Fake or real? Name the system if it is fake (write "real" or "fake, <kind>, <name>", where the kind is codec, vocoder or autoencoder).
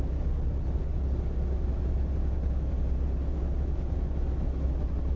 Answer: real